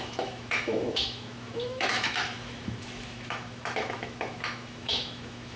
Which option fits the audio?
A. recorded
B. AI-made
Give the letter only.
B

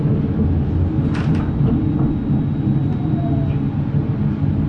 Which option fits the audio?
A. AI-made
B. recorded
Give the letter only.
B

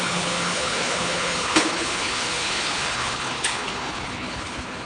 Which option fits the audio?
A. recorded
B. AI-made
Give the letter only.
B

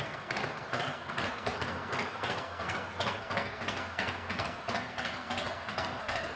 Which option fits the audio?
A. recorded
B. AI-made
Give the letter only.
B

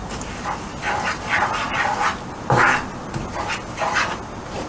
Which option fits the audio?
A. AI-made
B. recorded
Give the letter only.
B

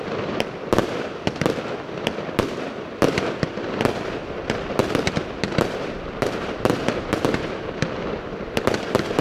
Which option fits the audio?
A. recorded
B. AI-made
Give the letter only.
B